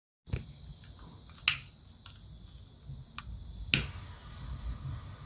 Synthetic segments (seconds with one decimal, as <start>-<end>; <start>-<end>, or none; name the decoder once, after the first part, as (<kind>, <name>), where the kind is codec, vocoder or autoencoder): none